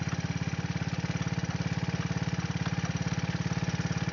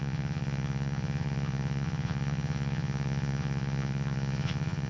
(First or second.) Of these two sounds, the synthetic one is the second